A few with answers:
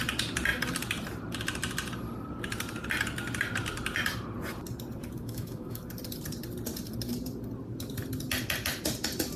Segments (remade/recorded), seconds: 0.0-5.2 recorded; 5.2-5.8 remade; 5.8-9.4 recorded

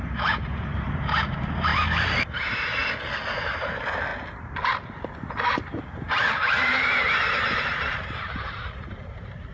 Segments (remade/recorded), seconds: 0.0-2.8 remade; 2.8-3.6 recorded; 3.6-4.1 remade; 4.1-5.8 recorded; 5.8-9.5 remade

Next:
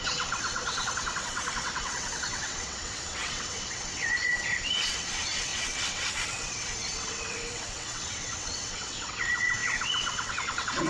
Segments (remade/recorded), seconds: 0.0-10.9 remade